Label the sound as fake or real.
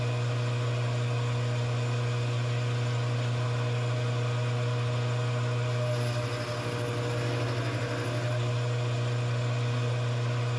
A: real